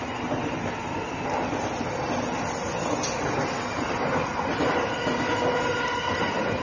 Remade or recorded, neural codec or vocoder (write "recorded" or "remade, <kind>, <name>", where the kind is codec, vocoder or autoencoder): recorded